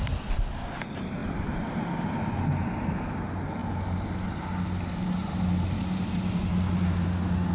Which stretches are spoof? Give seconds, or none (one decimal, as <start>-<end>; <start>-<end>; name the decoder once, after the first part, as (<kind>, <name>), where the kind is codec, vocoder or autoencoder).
1.2-2.2 (vocoder, BigVGAN v2); 3.6-4.4; 5.2-6.5